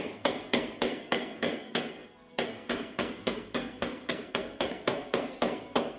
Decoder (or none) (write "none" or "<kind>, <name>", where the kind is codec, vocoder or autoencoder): codec, SNAC